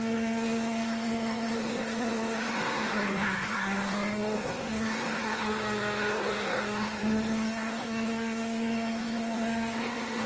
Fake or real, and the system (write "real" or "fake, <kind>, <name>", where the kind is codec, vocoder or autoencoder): fake, codec, SNAC